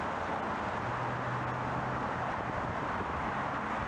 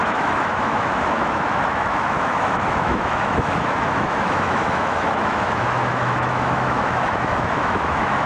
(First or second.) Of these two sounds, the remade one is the second